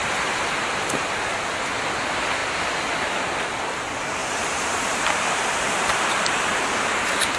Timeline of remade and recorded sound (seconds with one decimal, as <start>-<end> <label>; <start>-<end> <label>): 0.0-7.4 recorded